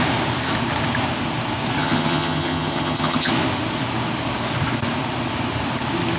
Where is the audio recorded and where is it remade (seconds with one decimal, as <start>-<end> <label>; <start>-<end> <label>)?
0.0-1.8 recorded; 1.8-3.3 remade; 3.3-6.2 recorded